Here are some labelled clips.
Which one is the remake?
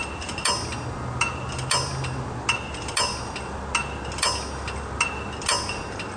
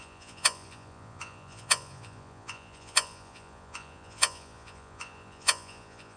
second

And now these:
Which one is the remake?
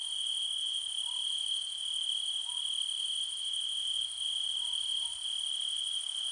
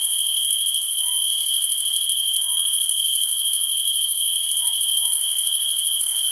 second